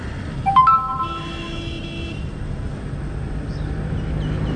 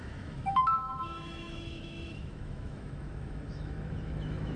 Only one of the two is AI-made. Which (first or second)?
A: second